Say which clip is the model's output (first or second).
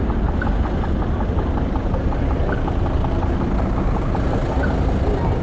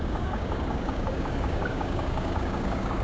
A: second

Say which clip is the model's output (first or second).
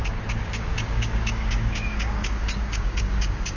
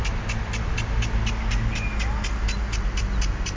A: first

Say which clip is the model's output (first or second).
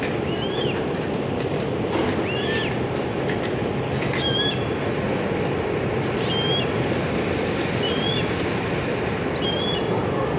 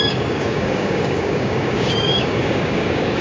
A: second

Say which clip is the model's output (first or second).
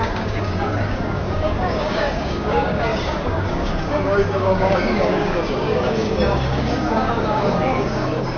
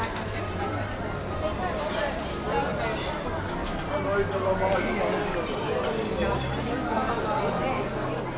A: first